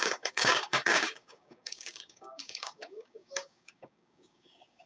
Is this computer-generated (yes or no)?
yes